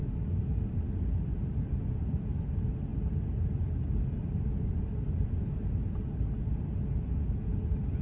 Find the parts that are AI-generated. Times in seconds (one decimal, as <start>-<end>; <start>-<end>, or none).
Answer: 0.0-1.9; 2.9-7.6